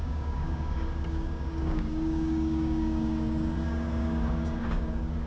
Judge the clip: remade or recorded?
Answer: remade